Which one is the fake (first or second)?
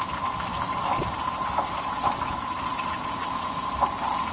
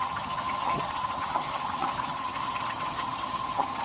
second